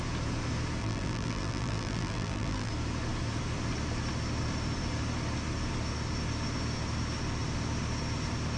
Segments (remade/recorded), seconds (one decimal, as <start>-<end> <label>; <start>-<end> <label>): 0.0-0.8 recorded; 0.8-2.7 remade; 2.7-8.6 recorded